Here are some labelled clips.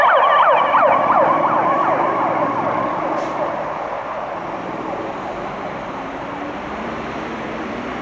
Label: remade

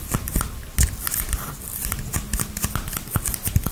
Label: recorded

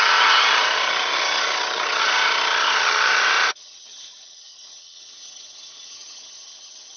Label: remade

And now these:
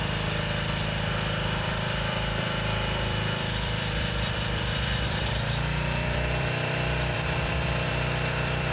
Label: remade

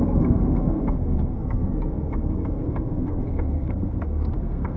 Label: remade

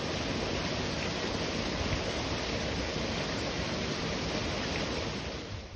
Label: recorded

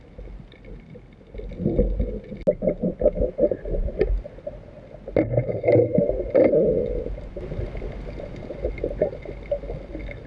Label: recorded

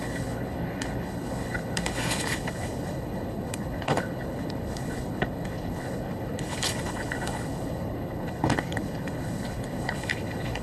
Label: remade